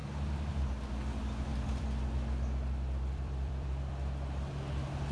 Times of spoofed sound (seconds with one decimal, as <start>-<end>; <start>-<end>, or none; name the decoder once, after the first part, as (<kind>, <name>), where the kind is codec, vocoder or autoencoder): 0.0-0.5 (vocoder, BigVGAN v2); 1.5-3.9